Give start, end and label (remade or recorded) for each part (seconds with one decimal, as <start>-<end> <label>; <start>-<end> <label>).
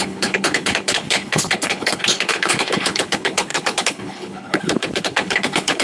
0.0-5.8 remade